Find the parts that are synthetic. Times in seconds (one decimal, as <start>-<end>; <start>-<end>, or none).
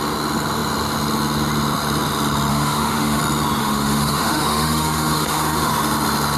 2.5-3.2; 3.6-5.7